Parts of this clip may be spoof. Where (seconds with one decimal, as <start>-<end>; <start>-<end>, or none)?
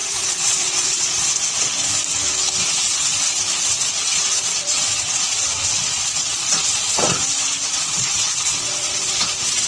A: 0.0-1.9; 3.6-9.7